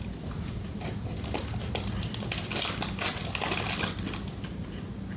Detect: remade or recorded recorded